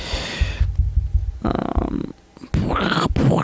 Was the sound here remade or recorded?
recorded